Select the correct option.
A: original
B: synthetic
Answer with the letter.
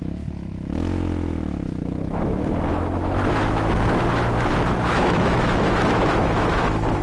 B